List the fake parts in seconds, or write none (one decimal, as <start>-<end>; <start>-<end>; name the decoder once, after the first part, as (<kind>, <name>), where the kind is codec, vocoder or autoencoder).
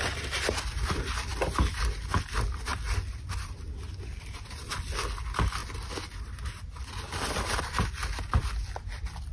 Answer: none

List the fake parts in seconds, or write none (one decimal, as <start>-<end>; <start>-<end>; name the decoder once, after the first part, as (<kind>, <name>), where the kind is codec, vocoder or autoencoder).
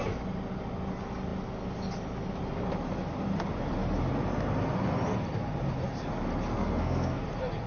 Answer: 6.5-7.2 (codec, SNAC)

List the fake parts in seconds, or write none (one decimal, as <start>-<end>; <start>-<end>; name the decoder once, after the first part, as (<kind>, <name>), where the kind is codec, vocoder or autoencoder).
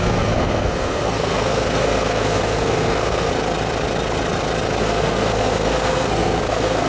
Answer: 0.0-3.3 (codec, SNAC); 4.8-6.9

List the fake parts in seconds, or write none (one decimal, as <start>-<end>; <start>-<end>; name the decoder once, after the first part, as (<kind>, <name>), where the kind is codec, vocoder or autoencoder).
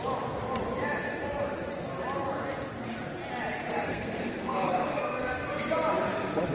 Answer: 3.7-5.0 (codec, SNAC)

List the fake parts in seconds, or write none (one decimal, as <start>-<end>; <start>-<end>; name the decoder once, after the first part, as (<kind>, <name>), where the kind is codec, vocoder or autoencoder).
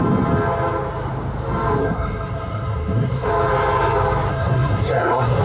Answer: 1.8-3.3 (codec, SNAC); 4.3-5.4